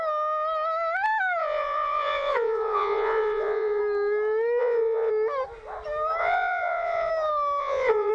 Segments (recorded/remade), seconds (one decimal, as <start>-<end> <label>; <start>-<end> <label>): 0.0-1.4 recorded; 1.4-3.8 remade; 3.8-4.6 recorded; 4.6-5.1 remade; 5.1-6.2 recorded; 6.2-7.1 remade; 7.1-7.6 recorded; 7.6-8.1 remade